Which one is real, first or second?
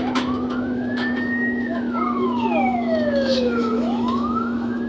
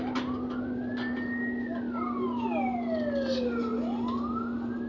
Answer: second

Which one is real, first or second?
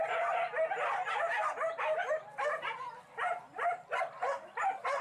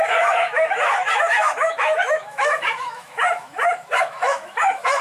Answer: first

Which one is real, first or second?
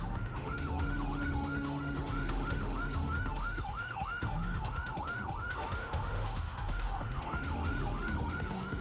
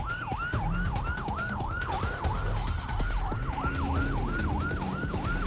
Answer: second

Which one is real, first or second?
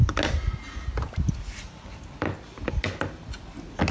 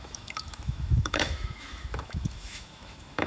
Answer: first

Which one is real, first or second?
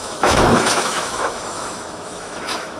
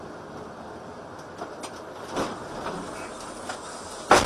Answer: second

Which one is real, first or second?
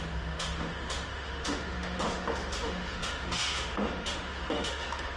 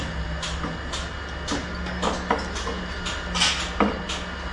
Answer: second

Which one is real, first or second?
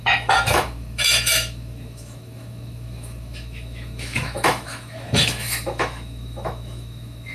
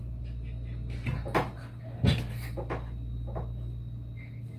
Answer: second